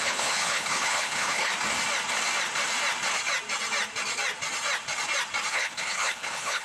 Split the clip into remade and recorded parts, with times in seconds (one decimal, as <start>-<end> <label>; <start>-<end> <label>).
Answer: 0.0-1.5 remade; 1.5-5.5 recorded; 5.5-6.6 remade